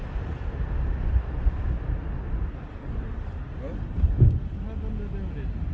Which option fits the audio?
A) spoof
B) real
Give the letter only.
B